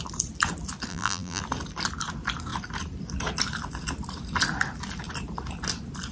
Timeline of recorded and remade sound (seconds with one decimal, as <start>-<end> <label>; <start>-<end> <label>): 0.0-0.9 recorded; 0.9-1.4 remade; 1.4-6.1 recorded